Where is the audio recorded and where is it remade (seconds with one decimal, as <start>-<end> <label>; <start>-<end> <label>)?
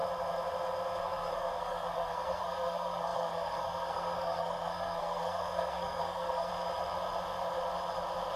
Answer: 0.0-1.0 recorded; 1.0-6.5 remade; 6.5-8.4 recorded